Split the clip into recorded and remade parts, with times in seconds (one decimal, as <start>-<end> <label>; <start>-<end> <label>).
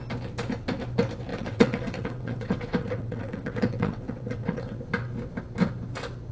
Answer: 0.0-1.3 recorded; 1.3-4.8 remade; 4.8-6.3 recorded